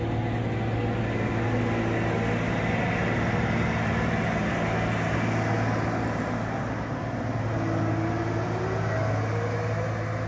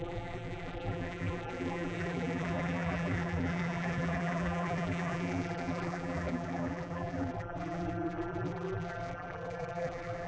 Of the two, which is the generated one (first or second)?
second